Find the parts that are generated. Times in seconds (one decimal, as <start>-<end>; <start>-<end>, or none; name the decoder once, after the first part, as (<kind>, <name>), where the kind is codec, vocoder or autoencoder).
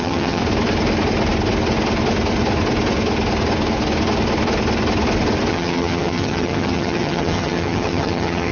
0.0-0.4 (vocoder, HiFi-GAN); 5.5-8.5